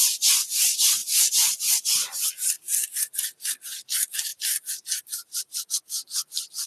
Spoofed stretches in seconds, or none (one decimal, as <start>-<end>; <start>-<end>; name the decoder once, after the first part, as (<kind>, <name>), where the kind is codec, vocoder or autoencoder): 1.0-2.3 (vocoder, BigVGAN v2); 4.3-5.7